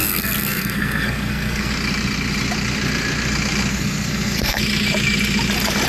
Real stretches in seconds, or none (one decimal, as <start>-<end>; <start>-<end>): 1.7-3.7; 4.6-5.9